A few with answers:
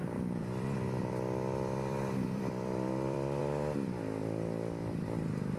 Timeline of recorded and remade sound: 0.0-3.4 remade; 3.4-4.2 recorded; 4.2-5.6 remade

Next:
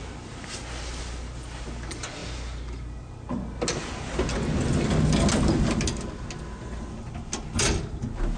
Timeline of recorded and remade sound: 0.0-8.4 recorded

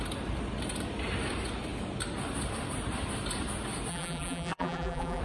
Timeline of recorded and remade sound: 0.0-3.9 recorded; 3.9-5.2 remade

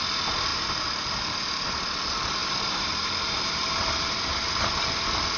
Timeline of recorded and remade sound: 0.0-0.5 recorded; 0.5-1.1 remade; 1.1-2.4 recorded; 2.4-4.6 remade; 4.6-5.4 recorded

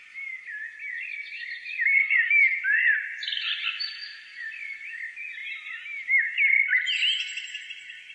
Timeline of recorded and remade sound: 0.0-1.6 recorded; 1.6-4.9 remade; 4.9-5.4 recorded; 5.4-7.6 remade; 7.6-8.1 recorded

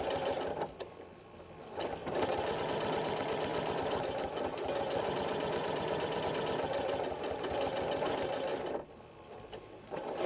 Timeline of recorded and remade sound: 0.0-2.0 recorded; 2.0-2.6 remade; 2.6-3.5 recorded; 3.5-6.2 remade; 6.2-8.5 recorded; 8.5-10.3 remade